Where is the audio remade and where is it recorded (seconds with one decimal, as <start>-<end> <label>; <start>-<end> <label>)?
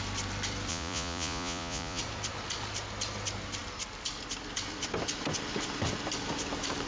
0.0-0.7 recorded; 0.7-2.0 remade; 2.0-6.9 recorded